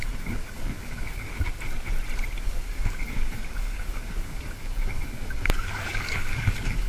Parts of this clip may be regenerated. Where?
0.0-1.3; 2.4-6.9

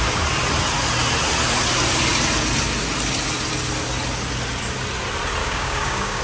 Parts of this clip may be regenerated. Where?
5.4-6.2

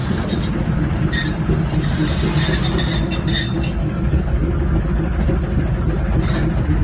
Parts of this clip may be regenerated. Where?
3.8-4.8

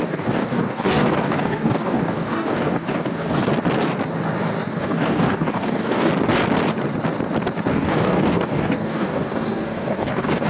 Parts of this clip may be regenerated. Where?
0.0-3.5; 4.8-6.1; 7.7-10.5

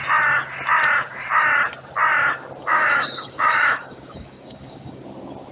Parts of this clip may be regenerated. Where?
2.6-5.0